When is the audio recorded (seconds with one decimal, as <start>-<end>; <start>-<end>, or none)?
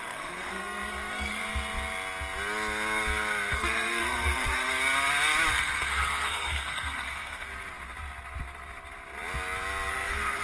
1.4-3.5; 4.7-5.5; 7.5-9.9